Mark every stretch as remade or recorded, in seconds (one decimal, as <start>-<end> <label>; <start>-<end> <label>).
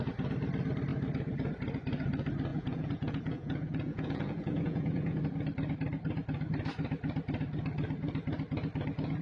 0.0-2.5 recorded; 2.5-5.2 remade; 5.2-9.2 recorded